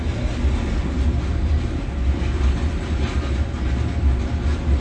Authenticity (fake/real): real